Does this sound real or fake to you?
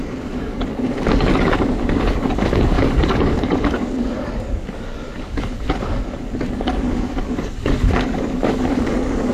fake